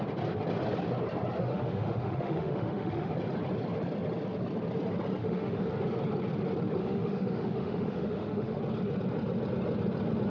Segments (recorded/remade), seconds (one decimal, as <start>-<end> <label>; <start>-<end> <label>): 0.0-1.4 recorded; 1.4-3.1 remade; 3.1-5.2 recorded; 5.2-5.7 remade; 5.7-6.8 recorded; 6.8-8.6 remade; 8.6-10.3 recorded